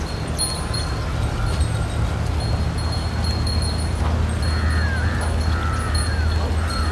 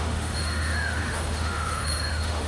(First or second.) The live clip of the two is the first